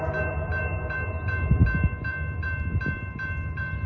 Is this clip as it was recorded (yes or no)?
no